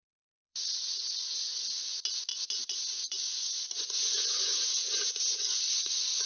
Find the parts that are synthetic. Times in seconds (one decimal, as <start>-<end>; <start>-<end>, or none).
0.5-1.8; 2.3-6.3